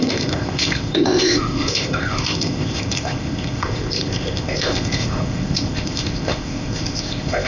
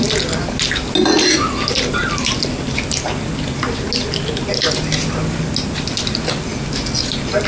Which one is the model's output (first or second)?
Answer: first